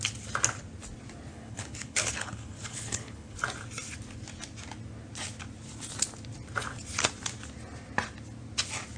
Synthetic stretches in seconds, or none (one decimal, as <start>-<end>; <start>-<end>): 1.3-3.4